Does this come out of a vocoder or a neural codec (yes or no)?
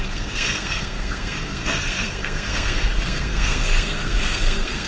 yes